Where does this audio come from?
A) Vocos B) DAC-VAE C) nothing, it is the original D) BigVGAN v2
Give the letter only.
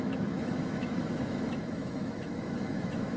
B